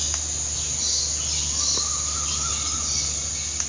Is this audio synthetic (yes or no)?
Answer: no